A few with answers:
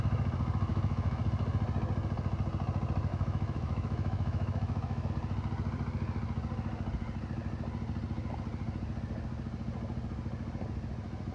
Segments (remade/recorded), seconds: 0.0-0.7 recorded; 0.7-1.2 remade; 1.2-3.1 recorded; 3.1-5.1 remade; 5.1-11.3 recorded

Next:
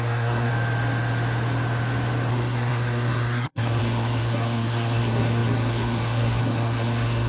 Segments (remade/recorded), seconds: 0.0-0.5 remade; 0.5-2.3 recorded; 2.3-7.3 remade

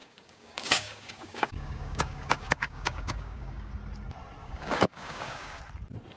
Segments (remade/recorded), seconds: 0.0-3.7 remade; 3.7-4.4 recorded; 4.4-5.6 remade; 5.6-6.2 recorded

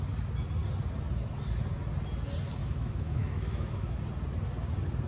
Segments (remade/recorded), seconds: 0.0-2.6 recorded; 2.6-4.0 remade; 4.0-5.1 recorded

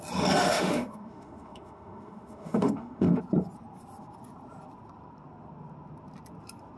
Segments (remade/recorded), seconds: 0.0-0.4 recorded; 0.4-3.2 remade; 3.2-6.8 recorded

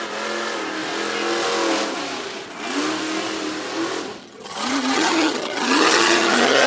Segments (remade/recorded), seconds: 0.0-4.2 recorded; 4.2-6.7 remade